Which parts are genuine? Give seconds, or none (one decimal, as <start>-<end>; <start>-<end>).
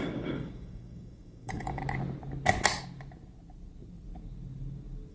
1.8-5.1